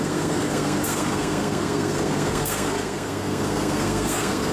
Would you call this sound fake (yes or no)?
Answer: yes